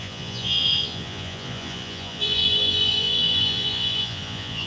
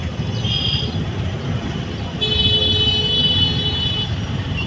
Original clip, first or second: second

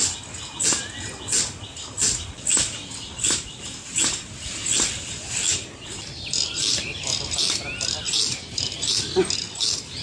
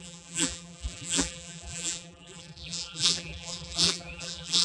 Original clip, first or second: first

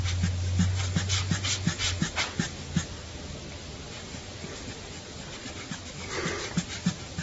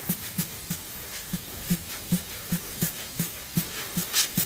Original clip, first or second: first